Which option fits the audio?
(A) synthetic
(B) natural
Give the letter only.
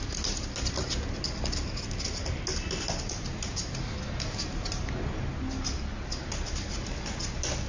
B